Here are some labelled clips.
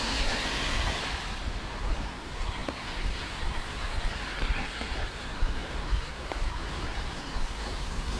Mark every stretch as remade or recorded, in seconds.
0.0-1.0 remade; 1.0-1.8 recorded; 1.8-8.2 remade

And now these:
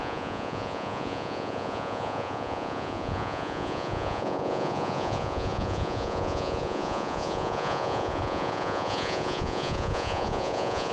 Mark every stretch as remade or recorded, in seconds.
0.0-10.9 remade

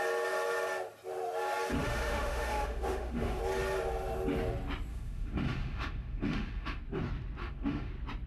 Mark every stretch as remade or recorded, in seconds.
0.0-1.8 recorded; 1.8-3.4 remade; 3.4-4.9 recorded; 4.9-6.8 remade; 6.8-7.4 recorded; 7.4-7.9 remade; 7.9-8.3 recorded